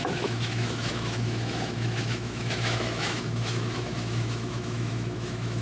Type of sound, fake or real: fake